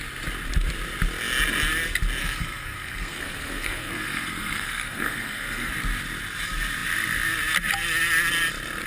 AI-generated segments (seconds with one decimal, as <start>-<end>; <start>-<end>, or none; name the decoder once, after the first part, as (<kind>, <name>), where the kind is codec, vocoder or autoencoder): 2.2-5.7 (codec, SNAC)